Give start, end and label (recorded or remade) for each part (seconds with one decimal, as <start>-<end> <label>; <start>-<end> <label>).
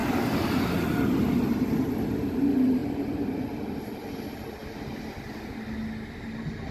0.0-0.7 remade; 0.7-2.8 recorded; 2.8-3.8 remade; 3.8-6.7 recorded